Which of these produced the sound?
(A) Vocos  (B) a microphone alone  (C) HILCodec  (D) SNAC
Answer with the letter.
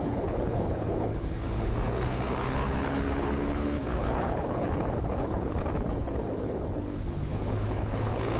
C